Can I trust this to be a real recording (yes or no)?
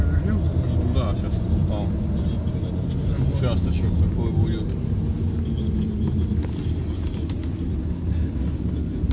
yes